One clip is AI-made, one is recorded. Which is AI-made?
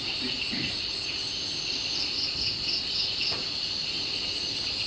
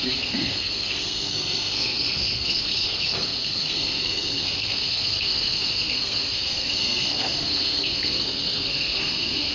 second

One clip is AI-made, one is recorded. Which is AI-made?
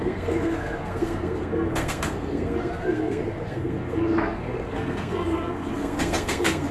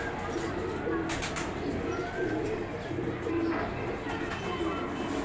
first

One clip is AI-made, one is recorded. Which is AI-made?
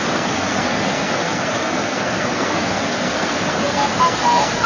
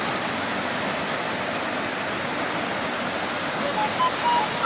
first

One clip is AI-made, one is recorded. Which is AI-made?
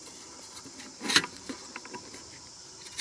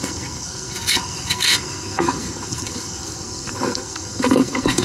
second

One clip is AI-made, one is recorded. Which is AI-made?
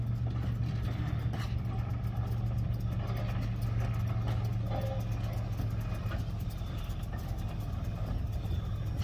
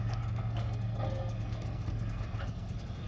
second